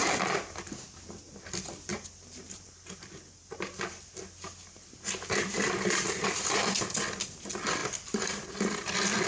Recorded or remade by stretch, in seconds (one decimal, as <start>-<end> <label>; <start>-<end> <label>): 0.0-1.9 recorded; 1.9-3.8 remade; 3.8-4.6 recorded; 4.6-6.8 remade; 6.8-9.3 recorded